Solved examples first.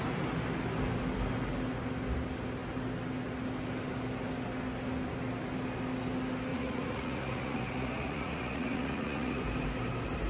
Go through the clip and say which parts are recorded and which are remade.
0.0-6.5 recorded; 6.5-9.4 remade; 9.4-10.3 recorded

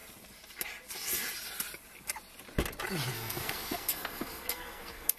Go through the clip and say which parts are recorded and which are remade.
0.0-3.1 recorded; 3.1-5.2 remade

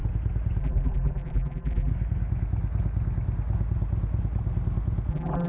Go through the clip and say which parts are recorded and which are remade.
0.0-0.6 recorded; 0.6-1.9 remade; 1.9-5.1 recorded; 5.1-5.5 remade

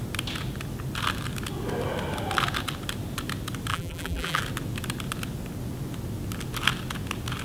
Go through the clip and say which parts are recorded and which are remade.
0.0-3.7 recorded; 3.7-4.4 remade; 4.4-7.4 recorded

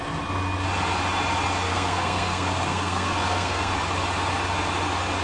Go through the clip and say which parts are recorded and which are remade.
0.0-1.7 recorded; 1.7-3.7 remade; 3.7-5.2 recorded

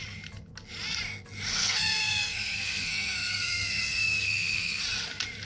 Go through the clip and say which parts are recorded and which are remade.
0.0-1.5 recorded; 1.5-4.8 remade; 4.8-5.5 recorded